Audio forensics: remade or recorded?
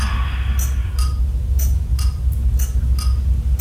recorded